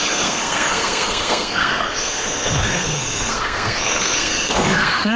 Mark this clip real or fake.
fake